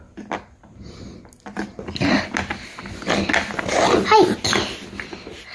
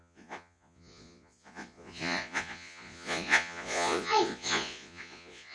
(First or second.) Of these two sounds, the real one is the first